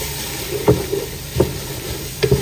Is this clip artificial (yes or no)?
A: no